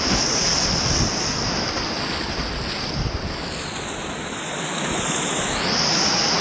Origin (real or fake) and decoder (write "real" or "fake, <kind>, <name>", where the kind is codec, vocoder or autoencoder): real